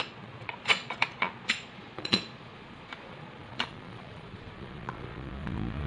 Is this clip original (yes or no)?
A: no